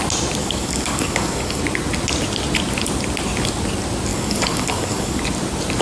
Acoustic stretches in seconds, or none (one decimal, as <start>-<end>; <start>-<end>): 0.0-0.4; 1.6-4.1; 5.2-5.8